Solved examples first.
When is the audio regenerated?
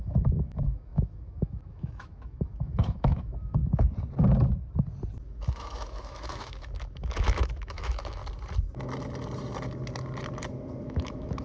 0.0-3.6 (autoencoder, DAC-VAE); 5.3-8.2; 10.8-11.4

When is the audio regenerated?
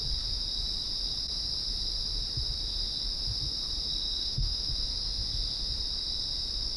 4.0-4.7 (autoencoder, DAC-VAE)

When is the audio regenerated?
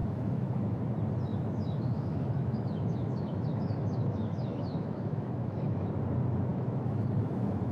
0.0-0.8 (autoencoder, DAC-VAE); 1.3-5.9; 6.5-7.7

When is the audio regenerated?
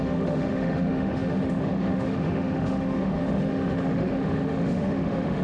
0.0-5.4 (autoencoder, DAC-VAE)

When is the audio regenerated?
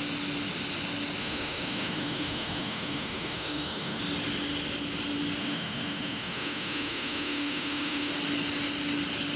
1.2-4.0 (autoencoder, DAC-VAE); 5.4-8.1